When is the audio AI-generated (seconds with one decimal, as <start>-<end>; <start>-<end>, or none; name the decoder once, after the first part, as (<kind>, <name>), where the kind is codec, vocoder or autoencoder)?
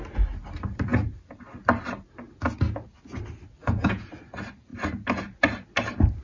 3.6-4.1 (vocoder, Vocos)